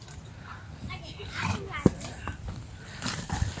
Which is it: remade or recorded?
recorded